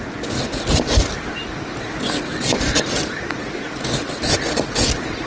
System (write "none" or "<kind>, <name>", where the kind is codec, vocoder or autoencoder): none